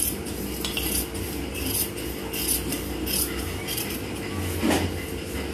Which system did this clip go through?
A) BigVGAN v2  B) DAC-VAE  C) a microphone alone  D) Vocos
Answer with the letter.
C